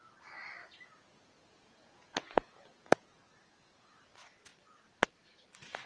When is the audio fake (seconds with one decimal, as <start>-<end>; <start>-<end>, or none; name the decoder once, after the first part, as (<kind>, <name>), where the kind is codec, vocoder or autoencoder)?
0.6-3.2 (vocoder, Vocos)